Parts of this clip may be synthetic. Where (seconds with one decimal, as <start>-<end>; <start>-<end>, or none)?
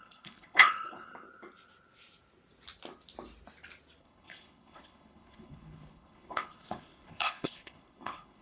0.0-1.1; 4.0-8.4